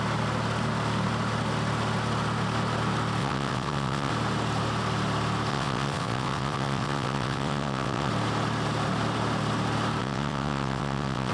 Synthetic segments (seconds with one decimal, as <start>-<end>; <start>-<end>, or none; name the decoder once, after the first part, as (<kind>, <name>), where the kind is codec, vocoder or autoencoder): 3.2-4.1 (vocoder, WaveNeXt); 5.5-8.1; 10.0-11.3